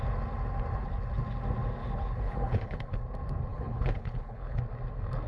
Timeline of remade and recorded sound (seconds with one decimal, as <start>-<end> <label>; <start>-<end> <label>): 0.0-1.8 recorded; 1.8-3.0 remade; 3.0-3.5 recorded; 3.5-4.6 remade; 4.6-5.3 recorded